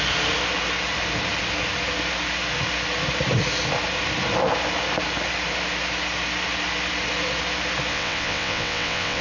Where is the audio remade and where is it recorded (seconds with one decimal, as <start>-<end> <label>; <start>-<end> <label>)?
0.0-7.9 recorded; 7.9-9.2 remade